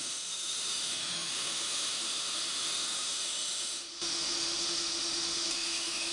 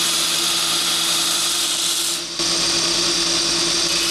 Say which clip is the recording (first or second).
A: second